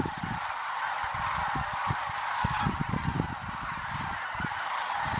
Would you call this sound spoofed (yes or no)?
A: no